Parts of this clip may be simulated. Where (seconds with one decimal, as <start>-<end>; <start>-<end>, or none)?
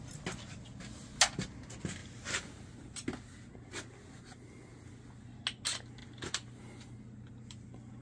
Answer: none